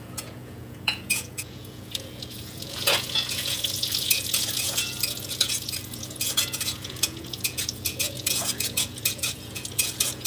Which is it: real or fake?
fake